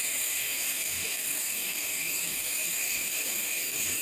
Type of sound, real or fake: fake